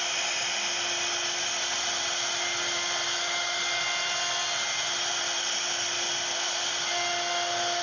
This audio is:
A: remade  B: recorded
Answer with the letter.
B